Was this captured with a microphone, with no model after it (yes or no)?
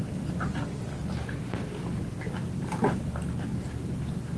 yes